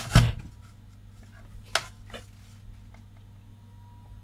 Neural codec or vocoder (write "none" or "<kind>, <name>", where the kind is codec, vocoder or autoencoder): none